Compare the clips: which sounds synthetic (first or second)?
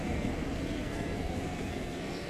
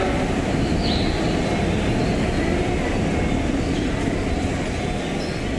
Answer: first